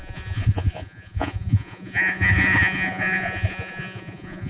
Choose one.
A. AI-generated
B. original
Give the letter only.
A